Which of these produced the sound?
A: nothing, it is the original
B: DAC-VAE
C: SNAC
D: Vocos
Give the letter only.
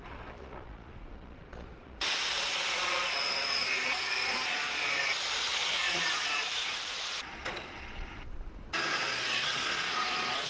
D